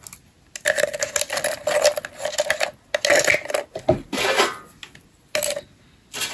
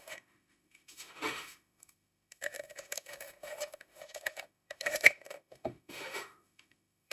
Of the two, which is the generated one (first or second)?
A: second